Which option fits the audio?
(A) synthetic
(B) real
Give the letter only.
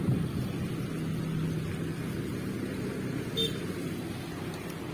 B